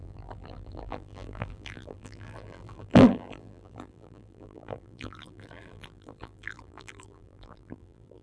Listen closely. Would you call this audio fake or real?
fake